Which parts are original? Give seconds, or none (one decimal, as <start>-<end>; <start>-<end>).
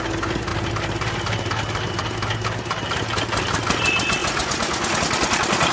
0.0-4.2; 5.0-5.7